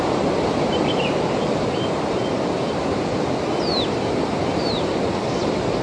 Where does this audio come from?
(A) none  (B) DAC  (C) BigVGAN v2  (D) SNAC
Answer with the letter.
C